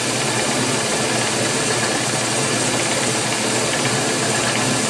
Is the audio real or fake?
real